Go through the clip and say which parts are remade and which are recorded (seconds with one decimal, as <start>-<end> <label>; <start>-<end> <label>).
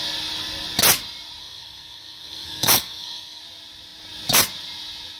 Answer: 0.0-1.4 recorded; 1.4-3.4 remade; 3.4-5.2 recorded